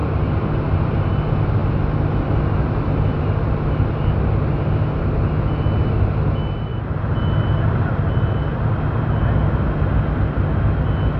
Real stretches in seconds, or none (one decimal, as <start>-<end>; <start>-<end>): 1.1-11.2